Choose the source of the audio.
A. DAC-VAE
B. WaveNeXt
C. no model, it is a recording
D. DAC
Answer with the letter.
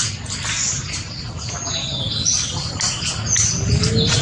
C